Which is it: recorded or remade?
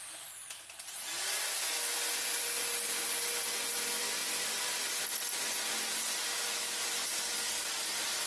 recorded